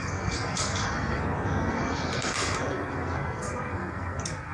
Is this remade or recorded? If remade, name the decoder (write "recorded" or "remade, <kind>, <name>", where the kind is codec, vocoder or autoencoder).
remade, codec, SNAC